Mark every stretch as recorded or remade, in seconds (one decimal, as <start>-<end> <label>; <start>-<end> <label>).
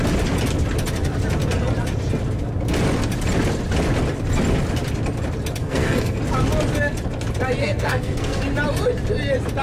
0.0-5.6 recorded; 5.6-6.2 remade; 6.2-7.6 recorded; 7.6-8.4 remade; 8.4-9.6 recorded